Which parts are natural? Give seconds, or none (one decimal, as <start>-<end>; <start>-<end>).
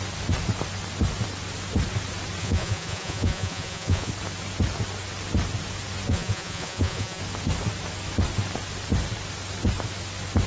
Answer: 0.0-2.4; 4.1-6.1; 7.2-10.5